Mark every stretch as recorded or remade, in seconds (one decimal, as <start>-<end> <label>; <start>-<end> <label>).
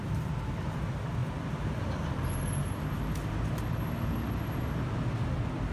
0.0-5.7 recorded